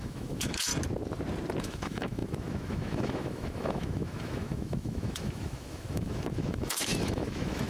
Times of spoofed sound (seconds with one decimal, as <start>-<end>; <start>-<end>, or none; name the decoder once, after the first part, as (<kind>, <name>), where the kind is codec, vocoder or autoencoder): 0.0-0.7 (autoencoder, DAC-VAE); 1.6-7.7